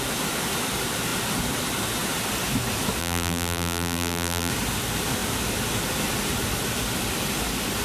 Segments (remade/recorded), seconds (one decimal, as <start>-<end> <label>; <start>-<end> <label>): 0.0-3.0 recorded; 3.0-4.5 remade; 4.5-7.8 recorded